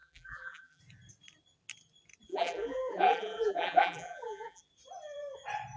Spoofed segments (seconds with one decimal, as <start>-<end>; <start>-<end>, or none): 0.0-0.8; 2.3-4.6